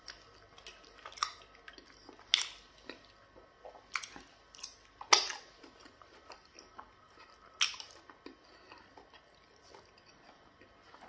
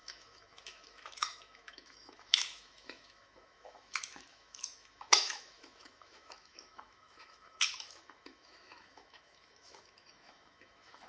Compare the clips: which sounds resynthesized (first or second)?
second